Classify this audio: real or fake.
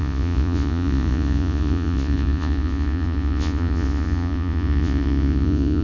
fake